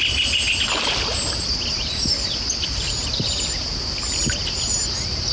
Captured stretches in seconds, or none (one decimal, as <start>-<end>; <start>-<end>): 0.0-5.3